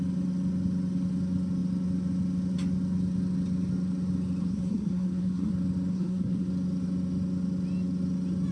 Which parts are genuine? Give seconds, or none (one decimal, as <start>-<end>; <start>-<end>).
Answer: 0.0-4.4; 5.5-5.9; 6.5-8.5